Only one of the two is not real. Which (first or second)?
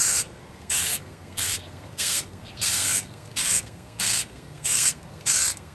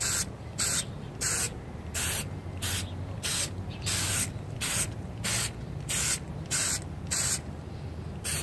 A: first